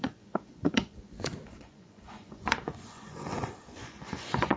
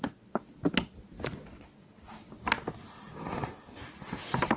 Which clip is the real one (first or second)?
second